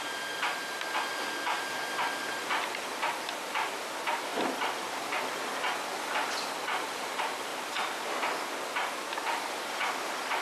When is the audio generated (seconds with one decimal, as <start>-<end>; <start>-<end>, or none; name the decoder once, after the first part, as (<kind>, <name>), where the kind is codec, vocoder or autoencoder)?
none